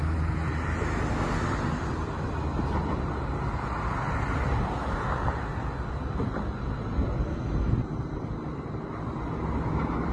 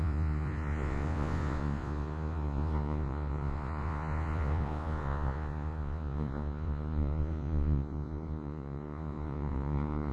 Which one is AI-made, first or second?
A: second